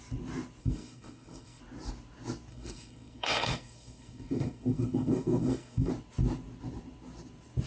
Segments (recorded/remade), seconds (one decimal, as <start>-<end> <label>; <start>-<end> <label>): 0.0-0.6 recorded; 0.6-1.6 remade; 1.6-2.5 recorded; 2.5-5.9 remade; 5.9-7.7 recorded